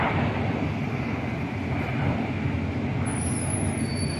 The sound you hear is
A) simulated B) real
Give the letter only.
B